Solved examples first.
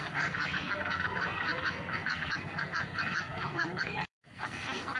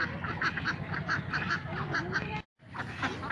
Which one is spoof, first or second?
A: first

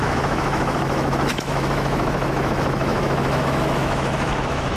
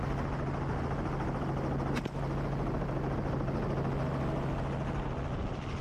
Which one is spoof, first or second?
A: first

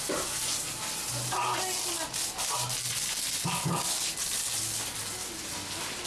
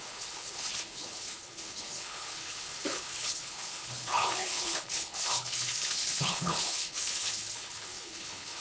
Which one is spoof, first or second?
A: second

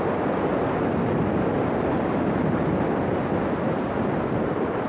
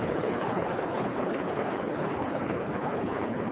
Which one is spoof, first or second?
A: second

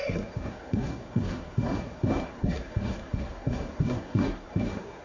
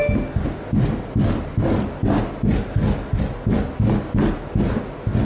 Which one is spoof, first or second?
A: first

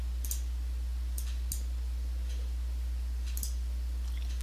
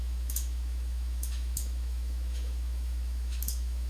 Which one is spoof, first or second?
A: second